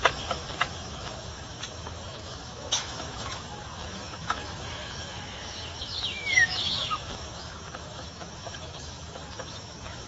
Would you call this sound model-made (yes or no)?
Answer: yes